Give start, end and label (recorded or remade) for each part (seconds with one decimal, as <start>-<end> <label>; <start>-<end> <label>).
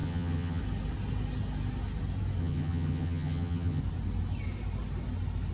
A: 0.0-0.6 remade; 0.6-2.4 recorded; 2.4-3.8 remade; 3.8-5.5 recorded